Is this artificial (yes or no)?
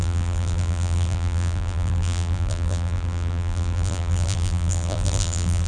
yes